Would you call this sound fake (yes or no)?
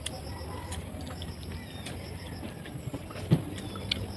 no